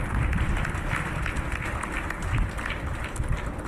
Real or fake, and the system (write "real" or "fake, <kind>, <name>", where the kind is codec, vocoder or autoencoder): real